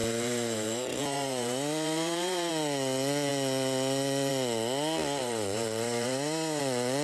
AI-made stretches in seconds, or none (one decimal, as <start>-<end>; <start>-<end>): 0.0-2.5; 5.2-6.6